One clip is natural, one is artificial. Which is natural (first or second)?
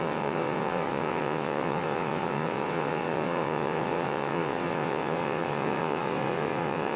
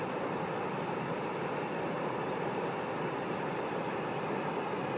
second